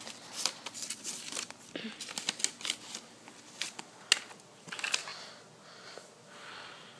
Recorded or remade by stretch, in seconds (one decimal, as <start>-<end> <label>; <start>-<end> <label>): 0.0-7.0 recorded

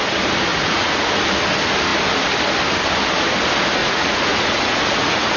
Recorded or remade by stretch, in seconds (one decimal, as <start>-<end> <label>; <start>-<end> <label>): 0.0-0.5 recorded; 0.5-1.1 remade; 1.1-3.8 recorded; 3.8-5.4 remade

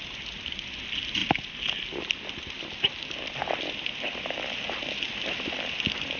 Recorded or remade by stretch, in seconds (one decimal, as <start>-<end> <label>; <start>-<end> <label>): 0.0-6.2 recorded

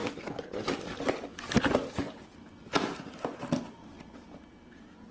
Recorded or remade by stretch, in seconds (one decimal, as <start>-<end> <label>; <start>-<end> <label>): 0.0-1.0 remade; 1.0-2.3 recorded; 2.3-4.4 remade; 4.4-5.1 recorded